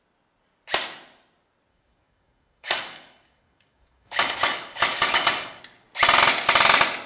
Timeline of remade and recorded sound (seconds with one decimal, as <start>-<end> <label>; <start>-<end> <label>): 0.0-1.7 recorded; 1.7-5.6 remade; 5.6-7.1 recorded